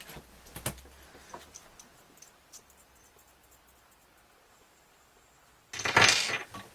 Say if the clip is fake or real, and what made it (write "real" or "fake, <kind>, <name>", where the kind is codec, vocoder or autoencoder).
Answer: real